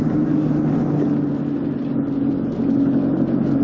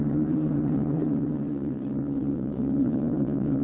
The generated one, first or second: second